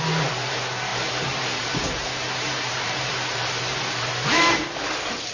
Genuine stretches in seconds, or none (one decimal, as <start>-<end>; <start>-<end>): 0.0-0.9; 4.1-5.3